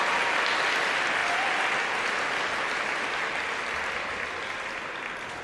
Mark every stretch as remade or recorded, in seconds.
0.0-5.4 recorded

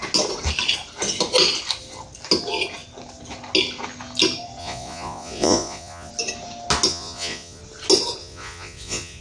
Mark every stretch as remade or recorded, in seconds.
0.0-4.6 recorded; 4.6-6.1 remade; 6.1-6.9 recorded; 6.9-7.6 remade; 7.6-8.2 recorded; 8.2-9.2 remade

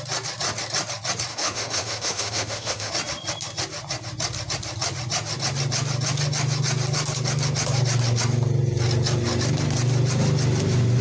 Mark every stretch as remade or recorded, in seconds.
0.0-1.3 recorded; 1.3-2.9 remade; 2.9-11.0 recorded

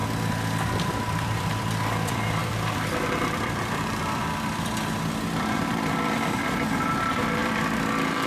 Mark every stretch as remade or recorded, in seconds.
0.0-0.8 recorded; 0.8-8.3 remade

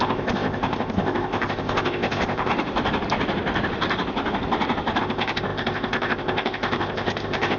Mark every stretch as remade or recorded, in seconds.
0.0-2.5 remade; 2.5-5.0 recorded; 5.0-7.6 remade

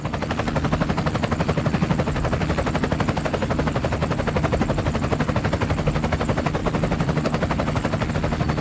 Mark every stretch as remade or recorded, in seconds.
0.0-8.6 recorded